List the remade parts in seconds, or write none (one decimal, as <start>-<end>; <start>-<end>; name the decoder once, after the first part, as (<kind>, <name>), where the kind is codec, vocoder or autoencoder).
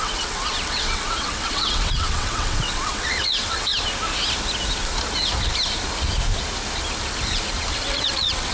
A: 0.0-3.7 (vocoder, WaveNeXt); 7.7-8.5